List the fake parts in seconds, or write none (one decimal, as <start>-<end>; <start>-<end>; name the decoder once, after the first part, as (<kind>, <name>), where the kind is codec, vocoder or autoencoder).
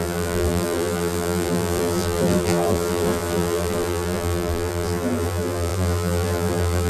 0.0-6.9 (vocoder, BigVGAN v2)